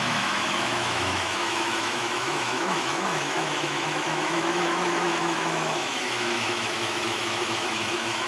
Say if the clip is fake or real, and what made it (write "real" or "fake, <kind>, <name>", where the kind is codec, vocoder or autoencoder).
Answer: fake, autoencoder, DAC-VAE